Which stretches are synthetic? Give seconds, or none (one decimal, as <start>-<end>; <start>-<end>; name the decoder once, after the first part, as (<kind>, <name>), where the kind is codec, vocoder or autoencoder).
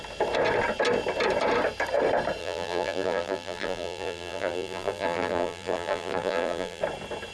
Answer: 2.4-6.8 (vocoder, BigVGAN v2)